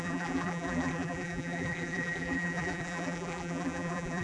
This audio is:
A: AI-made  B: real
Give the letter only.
A